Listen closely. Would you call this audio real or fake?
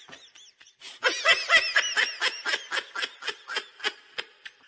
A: real